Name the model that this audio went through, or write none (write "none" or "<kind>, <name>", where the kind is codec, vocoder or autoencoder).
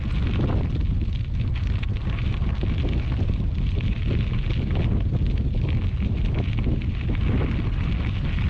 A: none